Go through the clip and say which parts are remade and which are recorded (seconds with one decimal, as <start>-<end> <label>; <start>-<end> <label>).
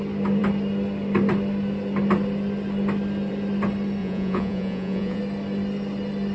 0.0-4.0 recorded; 4.0-5.2 remade; 5.2-6.3 recorded